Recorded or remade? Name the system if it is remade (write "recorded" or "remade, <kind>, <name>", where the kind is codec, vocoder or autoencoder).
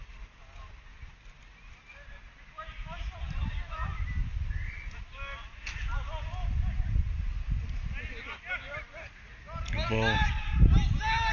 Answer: recorded